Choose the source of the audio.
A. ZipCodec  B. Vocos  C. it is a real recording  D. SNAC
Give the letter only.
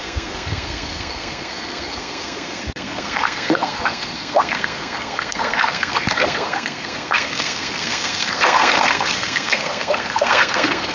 D